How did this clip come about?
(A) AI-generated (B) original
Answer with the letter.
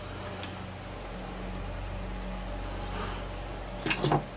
B